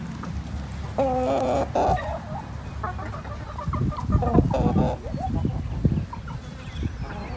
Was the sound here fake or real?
real